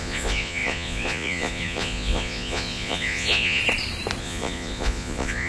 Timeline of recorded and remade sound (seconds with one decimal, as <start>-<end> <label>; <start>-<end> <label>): 0.0-3.6 remade; 3.6-4.2 recorded; 4.2-5.5 remade